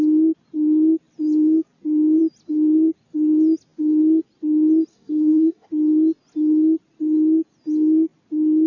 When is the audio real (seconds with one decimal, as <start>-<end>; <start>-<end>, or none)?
0.0-4.9; 5.7-8.7